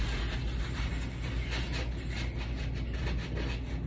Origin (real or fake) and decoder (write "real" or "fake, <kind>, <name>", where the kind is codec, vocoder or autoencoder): real